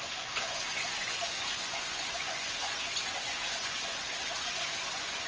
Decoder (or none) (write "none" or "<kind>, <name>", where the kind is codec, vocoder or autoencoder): vocoder, Vocos